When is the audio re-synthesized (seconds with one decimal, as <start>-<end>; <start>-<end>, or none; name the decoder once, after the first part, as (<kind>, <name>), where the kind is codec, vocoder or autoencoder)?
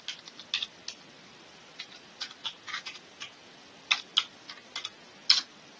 2.4-3.5 (vocoder, Vocos)